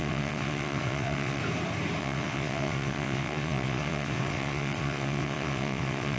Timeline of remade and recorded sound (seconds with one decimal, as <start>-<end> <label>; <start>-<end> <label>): 0.0-1.4 remade; 1.4-2.0 recorded; 2.0-6.2 remade

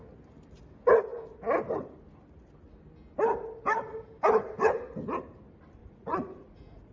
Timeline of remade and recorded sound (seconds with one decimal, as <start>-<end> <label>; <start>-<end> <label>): 0.0-5.8 recorded; 5.8-6.9 remade

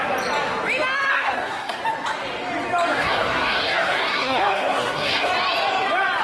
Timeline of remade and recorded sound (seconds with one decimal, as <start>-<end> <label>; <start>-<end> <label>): 0.0-1.1 recorded; 1.1-1.8 remade; 1.8-2.9 recorded; 2.9-5.3 remade; 5.3-6.2 recorded

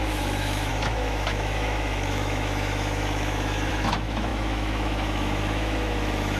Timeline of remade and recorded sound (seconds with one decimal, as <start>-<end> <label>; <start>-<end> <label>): 0.0-6.4 remade